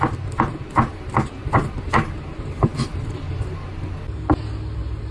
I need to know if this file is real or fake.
real